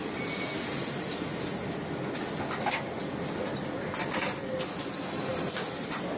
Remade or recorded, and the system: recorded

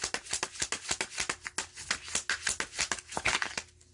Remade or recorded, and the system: recorded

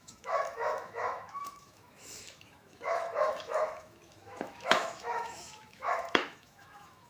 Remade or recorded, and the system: remade, autoencoder, DAC-VAE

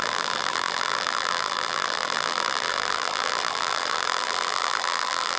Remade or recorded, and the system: remade, vocoder, BigVGAN v2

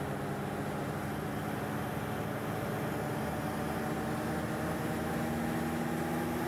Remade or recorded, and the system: recorded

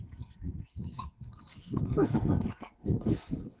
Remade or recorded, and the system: remade, codec, SNAC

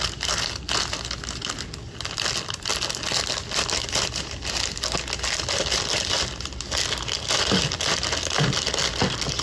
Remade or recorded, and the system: recorded